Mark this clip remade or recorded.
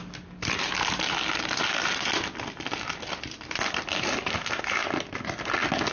recorded